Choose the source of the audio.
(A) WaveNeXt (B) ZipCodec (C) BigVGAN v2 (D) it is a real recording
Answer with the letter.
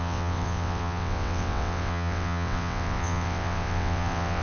A